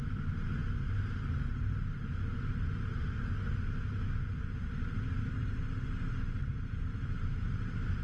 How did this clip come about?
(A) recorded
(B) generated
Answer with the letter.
A